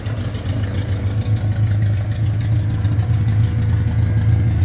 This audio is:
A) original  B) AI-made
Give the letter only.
A